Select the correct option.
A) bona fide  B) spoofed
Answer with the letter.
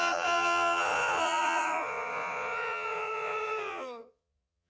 B